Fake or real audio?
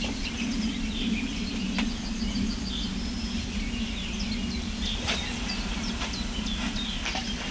real